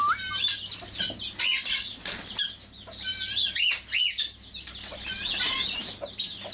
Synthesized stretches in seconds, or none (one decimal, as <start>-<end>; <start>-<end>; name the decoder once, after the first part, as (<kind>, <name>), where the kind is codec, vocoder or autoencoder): none